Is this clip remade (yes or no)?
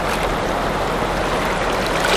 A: no